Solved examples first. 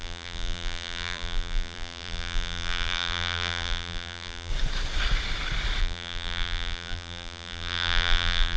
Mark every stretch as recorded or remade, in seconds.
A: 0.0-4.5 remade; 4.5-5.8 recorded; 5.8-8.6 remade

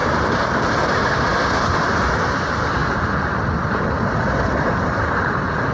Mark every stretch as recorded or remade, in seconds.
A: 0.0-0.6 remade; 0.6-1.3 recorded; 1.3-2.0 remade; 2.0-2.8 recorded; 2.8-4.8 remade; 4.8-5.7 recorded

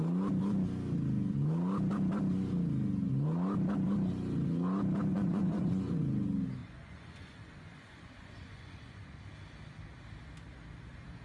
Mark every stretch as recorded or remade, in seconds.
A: 0.0-5.1 recorded; 5.1-6.0 remade; 6.0-6.6 recorded; 6.6-9.2 remade; 9.2-11.2 recorded

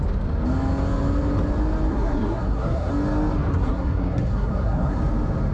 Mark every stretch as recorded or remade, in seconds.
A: 0.0-1.9 recorded; 1.9-2.9 remade; 2.9-3.5 recorded; 3.5-5.0 remade; 5.0-5.5 recorded